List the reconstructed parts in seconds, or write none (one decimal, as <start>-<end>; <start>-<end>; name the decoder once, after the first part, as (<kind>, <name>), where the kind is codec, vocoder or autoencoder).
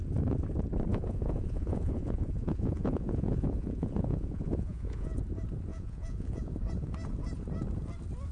0.9-5.2 (vocoder, Vocos); 5.7-6.5